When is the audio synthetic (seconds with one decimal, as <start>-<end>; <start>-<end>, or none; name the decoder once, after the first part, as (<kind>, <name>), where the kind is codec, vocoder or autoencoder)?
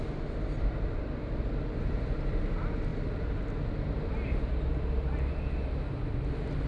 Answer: none